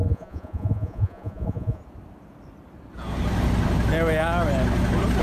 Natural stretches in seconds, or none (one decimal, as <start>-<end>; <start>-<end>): 1.8-5.2